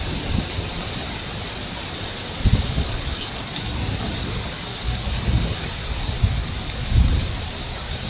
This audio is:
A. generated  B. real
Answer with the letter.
B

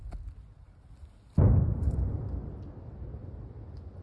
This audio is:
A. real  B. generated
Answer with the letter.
A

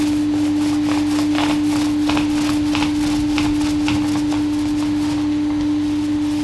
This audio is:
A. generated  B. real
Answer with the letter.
B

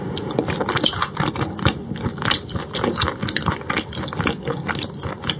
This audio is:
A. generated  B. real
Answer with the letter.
B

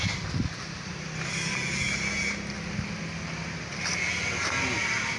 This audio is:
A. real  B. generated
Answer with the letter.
B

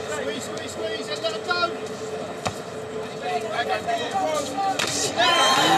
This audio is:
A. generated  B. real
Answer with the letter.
B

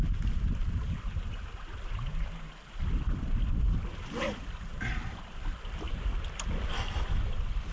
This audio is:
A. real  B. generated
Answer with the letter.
A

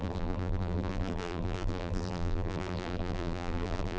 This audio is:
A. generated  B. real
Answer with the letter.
A